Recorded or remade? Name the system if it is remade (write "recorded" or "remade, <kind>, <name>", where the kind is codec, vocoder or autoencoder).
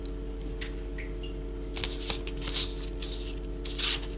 recorded